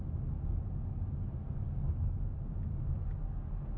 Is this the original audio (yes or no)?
yes